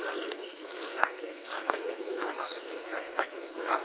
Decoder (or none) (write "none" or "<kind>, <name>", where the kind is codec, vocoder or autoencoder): codec, SNAC